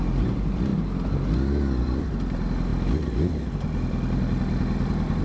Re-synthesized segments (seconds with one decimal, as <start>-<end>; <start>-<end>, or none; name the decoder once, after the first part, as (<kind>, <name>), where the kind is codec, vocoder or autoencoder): 0.0-0.7 (vocoder, BigVGAN v2); 1.8-2.7